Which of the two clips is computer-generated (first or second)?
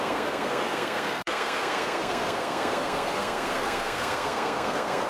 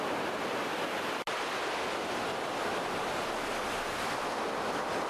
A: first